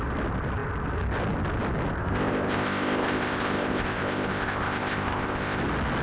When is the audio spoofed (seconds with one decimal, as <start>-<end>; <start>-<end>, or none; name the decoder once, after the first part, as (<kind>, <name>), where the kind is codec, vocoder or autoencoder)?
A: 2.0-5.6 (codec, ZipCodec)